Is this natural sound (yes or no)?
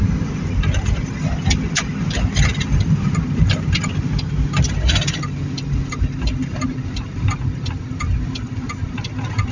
yes